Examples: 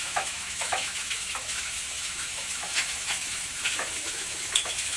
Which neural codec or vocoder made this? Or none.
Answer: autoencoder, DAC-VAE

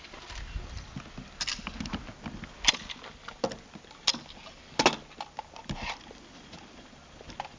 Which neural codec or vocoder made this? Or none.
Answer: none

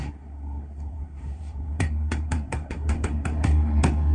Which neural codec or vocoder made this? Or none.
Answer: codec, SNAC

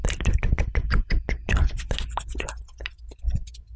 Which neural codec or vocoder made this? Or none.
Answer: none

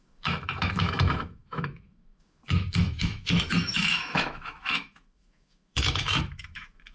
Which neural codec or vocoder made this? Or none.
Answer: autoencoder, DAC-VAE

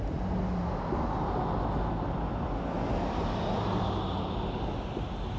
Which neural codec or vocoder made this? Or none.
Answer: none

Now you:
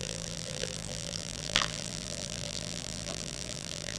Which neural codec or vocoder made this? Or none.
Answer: vocoder, BigVGAN v2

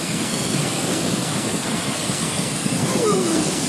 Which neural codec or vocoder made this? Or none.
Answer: codec, SNAC